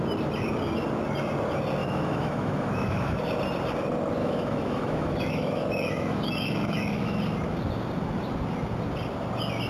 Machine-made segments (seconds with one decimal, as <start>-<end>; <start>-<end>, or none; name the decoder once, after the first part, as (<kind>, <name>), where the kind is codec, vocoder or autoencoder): 1.8-3.2 (autoencoder, DAC-VAE); 4.2-7.2